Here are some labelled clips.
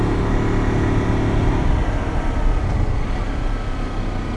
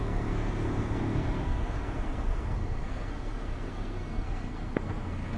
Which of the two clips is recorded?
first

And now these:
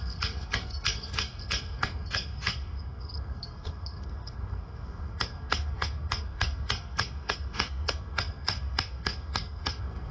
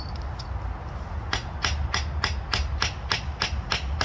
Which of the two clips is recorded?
second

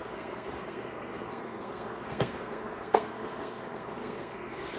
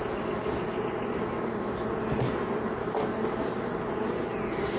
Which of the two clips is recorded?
second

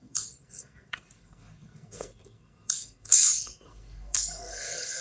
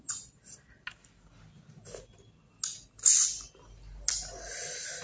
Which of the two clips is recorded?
second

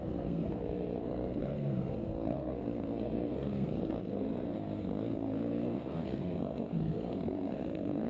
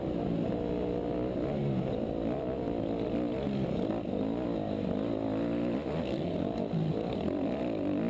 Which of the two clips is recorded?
second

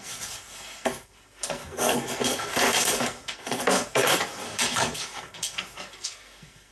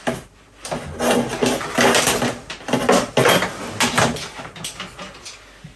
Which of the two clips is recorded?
second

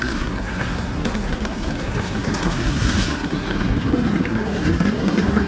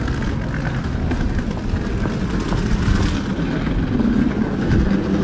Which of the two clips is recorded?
second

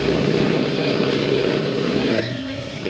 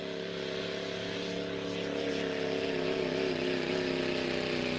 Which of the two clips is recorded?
second